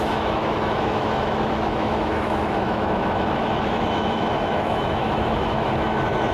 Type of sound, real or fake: fake